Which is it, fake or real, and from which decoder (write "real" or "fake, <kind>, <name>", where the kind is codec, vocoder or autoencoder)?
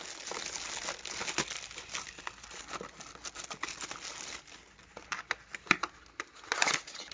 real